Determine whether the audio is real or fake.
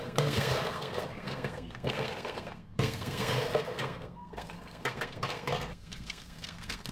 fake